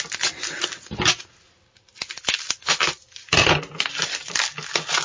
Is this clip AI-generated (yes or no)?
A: no